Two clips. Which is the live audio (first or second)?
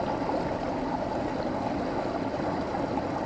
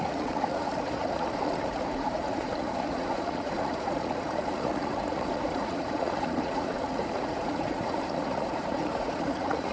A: first